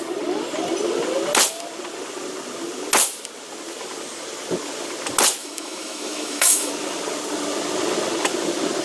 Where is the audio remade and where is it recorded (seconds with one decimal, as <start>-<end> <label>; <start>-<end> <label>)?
0.0-5.4 recorded; 5.4-6.7 remade; 6.7-8.8 recorded

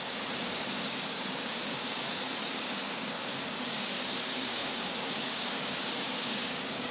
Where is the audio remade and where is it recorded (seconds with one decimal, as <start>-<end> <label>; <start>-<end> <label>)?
0.0-6.9 remade

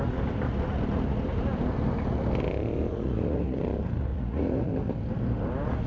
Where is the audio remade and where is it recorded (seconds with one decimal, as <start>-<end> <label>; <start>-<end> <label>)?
0.0-2.9 recorded; 2.9-3.6 remade; 3.6-4.1 recorded; 4.1-4.7 remade; 4.7-5.9 recorded

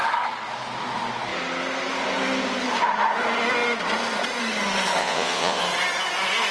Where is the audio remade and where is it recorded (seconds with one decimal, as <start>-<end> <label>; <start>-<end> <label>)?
0.0-5.0 recorded; 5.0-5.6 remade; 5.6-6.5 recorded